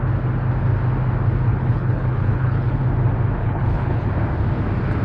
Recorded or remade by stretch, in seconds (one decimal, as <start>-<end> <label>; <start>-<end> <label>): 0.0-1.5 recorded; 1.5-2.8 remade; 2.8-3.4 recorded; 3.4-4.1 remade; 4.1-5.0 recorded